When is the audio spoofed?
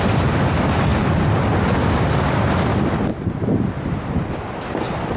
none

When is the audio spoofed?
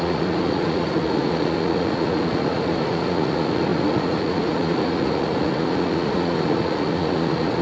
0.0-7.6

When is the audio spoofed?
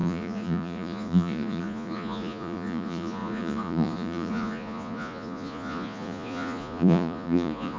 0.0-7.8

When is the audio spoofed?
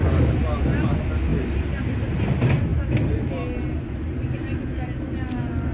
none